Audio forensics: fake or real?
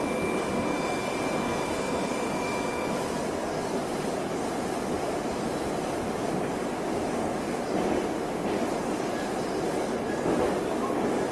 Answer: real